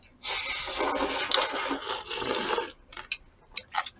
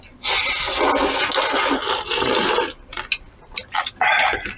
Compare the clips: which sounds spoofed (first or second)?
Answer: second